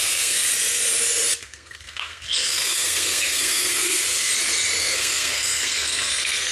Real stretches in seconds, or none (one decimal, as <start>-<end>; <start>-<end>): 0.5-1.4; 4.3-4.8